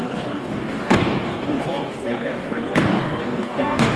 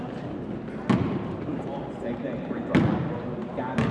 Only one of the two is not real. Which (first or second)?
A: first